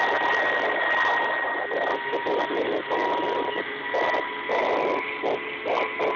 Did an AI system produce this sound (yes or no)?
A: no